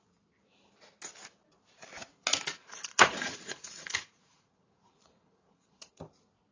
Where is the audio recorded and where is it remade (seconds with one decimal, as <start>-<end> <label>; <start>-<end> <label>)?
0.0-2.5 recorded; 2.5-5.9 remade; 5.9-6.5 recorded